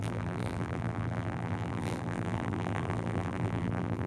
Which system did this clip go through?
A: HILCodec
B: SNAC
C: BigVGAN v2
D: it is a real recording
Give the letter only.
C